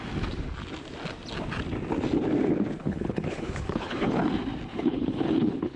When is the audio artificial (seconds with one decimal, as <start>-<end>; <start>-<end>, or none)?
2.8-4.2; 4.7-5.8